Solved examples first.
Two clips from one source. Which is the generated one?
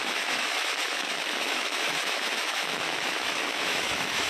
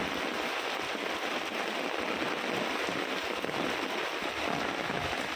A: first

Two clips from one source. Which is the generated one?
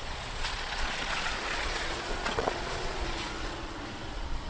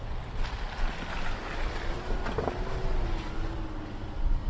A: first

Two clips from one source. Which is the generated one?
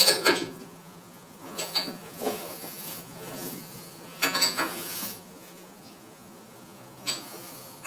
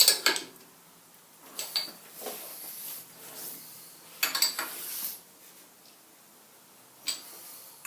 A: first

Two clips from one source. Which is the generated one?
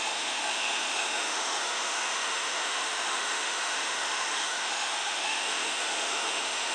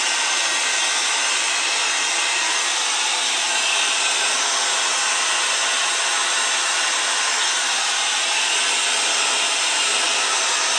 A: first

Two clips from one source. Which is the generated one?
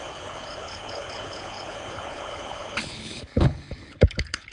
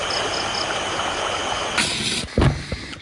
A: first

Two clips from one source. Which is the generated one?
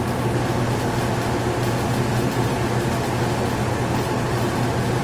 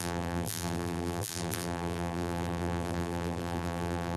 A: second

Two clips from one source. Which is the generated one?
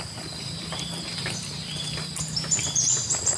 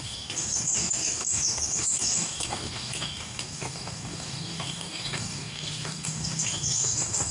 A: second